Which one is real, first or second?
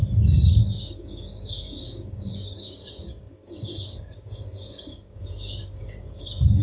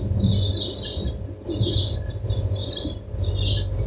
second